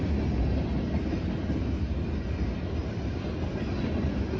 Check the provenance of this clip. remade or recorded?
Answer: recorded